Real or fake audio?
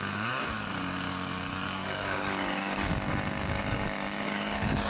fake